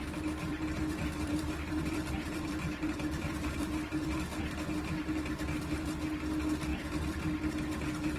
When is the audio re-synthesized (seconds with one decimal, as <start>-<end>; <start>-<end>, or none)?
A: 0.5-4.5; 6.7-7.5